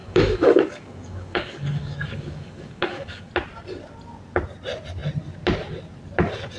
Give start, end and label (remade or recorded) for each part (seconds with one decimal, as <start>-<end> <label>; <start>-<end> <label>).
0.0-3.3 remade; 3.3-6.6 recorded